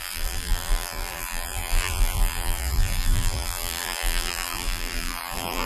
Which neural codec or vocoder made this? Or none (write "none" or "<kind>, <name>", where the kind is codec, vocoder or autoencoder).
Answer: vocoder, BigVGAN v2